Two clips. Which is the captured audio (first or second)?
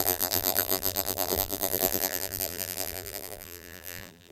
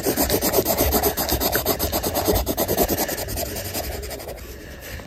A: second